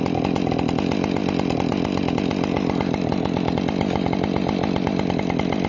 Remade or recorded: recorded